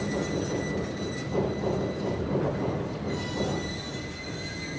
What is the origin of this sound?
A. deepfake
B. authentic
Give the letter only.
B